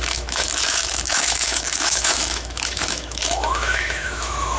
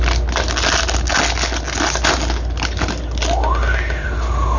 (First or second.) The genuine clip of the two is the second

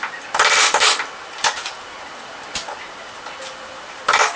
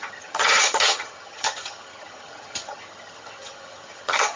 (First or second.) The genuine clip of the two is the first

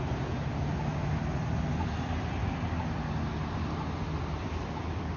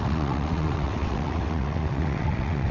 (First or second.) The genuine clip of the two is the first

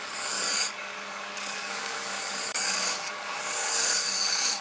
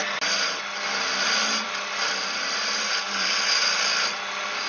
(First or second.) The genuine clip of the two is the second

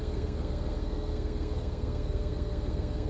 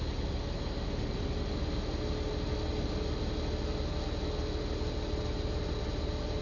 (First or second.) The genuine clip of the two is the second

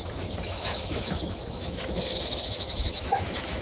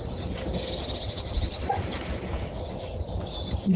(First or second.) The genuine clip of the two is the second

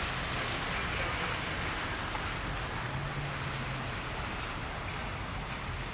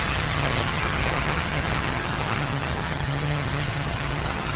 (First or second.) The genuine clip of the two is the first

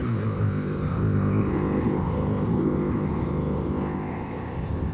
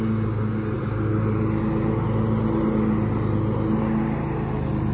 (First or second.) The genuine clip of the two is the second